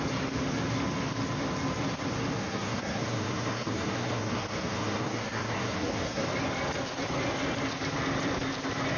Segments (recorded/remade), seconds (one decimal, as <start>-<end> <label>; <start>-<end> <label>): 0.0-2.4 recorded; 2.4-6.3 remade; 6.3-9.0 recorded